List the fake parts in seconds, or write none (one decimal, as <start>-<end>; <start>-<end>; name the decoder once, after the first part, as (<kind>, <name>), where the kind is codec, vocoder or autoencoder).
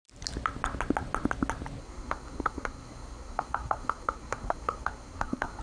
1.8-5.6 (codec, SNAC)